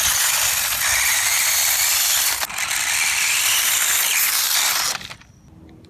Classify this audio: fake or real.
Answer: fake